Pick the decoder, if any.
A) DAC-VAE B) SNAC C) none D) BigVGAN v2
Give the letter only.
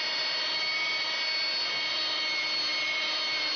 C